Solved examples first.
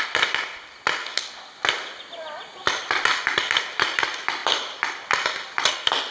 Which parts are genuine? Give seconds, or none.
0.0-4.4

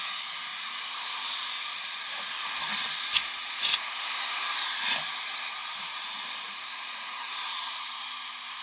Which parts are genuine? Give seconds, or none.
0.0-0.5; 2.5-5.6

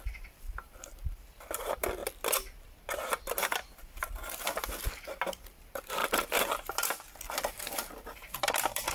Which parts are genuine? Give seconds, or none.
2.0-4.0